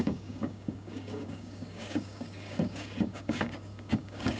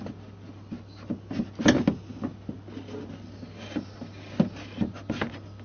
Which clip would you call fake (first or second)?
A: first